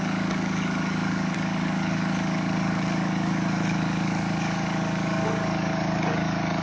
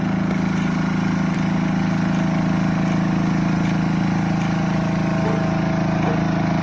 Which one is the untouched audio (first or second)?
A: second